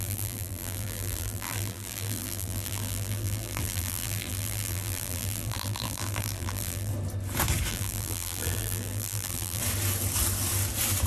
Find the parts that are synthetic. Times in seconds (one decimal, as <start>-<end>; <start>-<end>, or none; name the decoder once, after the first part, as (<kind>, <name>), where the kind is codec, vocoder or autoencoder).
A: 0.0-6.9 (vocoder, BigVGAN v2); 7.7-9.6